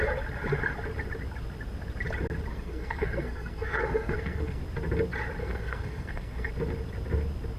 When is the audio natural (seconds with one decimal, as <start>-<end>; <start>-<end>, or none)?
0.0-2.5; 4.6-5.4; 6.5-7.6